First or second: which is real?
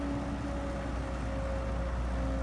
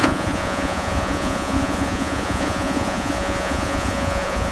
first